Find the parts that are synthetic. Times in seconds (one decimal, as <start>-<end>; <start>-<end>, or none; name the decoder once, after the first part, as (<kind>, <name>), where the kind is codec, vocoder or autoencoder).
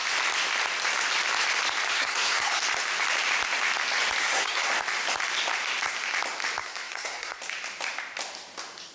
1.9-2.6 (codec, SNAC); 4.2-4.7; 6.6-7.4